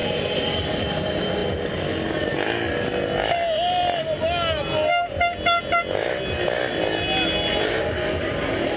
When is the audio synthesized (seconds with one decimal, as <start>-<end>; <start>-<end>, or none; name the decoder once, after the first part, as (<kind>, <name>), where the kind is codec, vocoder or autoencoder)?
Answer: 0.0-0.9 (vocoder, BigVGAN v2)